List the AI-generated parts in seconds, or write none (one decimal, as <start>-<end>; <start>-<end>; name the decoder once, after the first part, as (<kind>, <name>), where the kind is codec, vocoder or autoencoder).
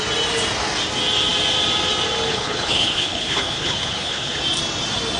2.3-4.4 (codec, HILCodec)